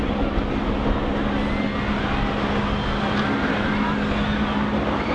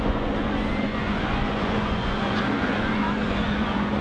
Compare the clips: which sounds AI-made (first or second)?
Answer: second